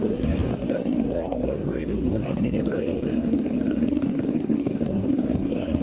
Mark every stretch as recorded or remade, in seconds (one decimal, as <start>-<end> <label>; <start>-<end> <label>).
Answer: 0.0-5.8 remade